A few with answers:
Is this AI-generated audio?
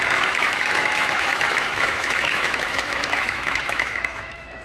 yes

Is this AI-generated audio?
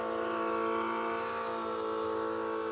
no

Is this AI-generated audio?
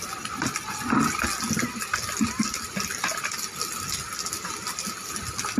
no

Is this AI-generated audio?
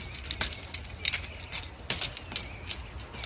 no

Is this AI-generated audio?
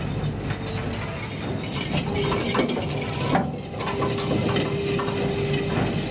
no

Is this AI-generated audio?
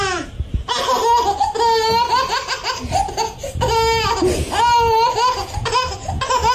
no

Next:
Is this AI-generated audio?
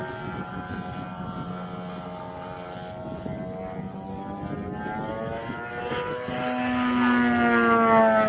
no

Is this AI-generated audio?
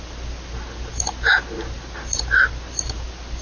no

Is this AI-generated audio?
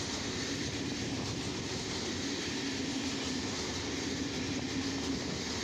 no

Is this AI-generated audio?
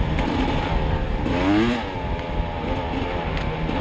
no